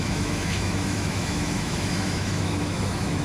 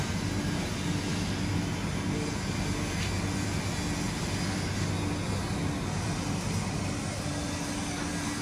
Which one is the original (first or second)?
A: second